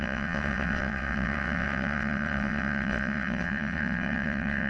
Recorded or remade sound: remade